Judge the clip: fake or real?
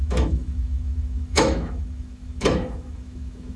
fake